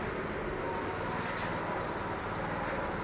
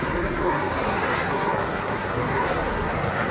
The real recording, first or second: first